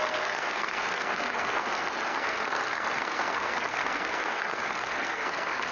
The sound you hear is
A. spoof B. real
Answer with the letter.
A